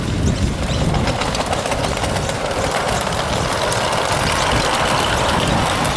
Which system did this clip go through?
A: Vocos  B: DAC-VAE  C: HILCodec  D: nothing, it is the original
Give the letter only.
D